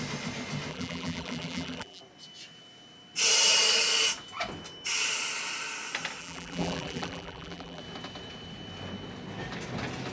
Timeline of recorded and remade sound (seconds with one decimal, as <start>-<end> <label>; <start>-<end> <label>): 0.0-0.7 recorded; 0.7-2.0 remade; 2.0-6.2 recorded; 6.2-7.8 remade; 7.8-10.1 recorded